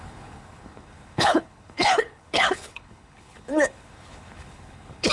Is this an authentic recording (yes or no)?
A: no